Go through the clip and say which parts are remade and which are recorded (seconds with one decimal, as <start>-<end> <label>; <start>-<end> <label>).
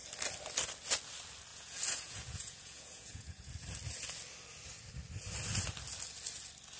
0.0-1.5 recorded; 1.5-3.5 remade; 3.5-6.8 recorded